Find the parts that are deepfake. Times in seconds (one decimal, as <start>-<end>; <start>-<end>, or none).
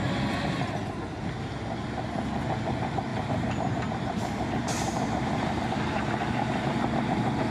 3.1-6.1